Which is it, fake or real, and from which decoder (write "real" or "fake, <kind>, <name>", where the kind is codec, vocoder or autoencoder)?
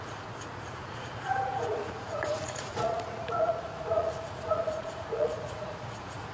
fake, vocoder, Vocos